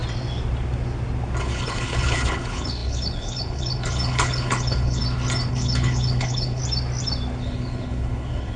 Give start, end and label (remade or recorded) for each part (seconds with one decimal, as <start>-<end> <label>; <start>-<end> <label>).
0.0-1.4 recorded; 1.4-5.0 remade; 5.0-5.5 recorded; 5.5-6.6 remade; 6.6-7.4 recorded; 7.4-8.6 remade